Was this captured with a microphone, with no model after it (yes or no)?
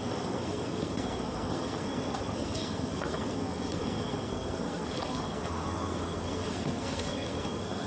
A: no